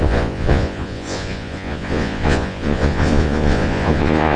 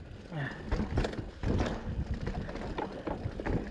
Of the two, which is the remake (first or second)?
first